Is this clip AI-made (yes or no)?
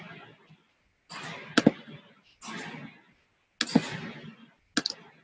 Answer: no